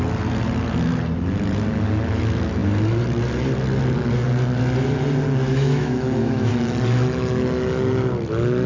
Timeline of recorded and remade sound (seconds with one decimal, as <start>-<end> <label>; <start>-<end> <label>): 0.0-5.5 recorded; 5.5-6.5 remade; 6.5-8.7 recorded